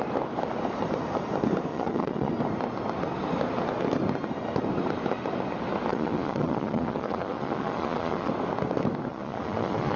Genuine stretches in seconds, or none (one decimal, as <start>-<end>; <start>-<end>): 0.0-1.7; 2.3-5.9; 8.3-9.1